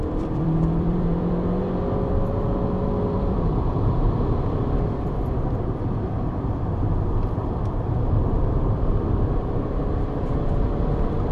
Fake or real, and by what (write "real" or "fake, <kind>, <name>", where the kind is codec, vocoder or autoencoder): fake, vocoder, BigVGAN v2